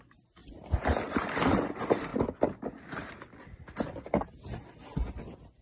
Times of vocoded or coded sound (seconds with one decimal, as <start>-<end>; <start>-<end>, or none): 0.0-2.1